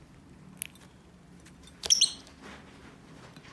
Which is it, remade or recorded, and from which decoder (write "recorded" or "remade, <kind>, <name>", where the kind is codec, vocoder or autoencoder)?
recorded